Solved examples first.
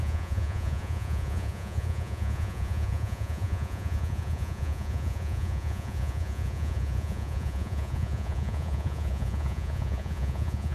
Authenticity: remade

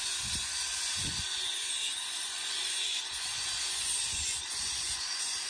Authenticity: remade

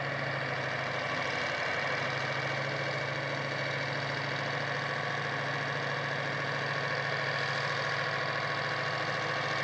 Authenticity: recorded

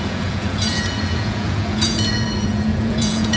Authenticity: remade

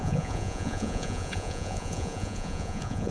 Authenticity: remade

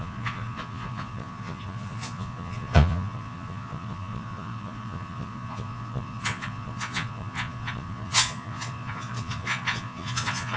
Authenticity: remade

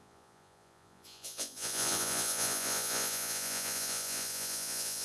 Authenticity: remade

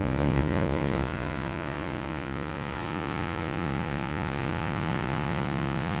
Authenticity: remade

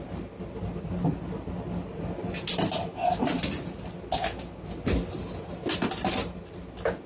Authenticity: recorded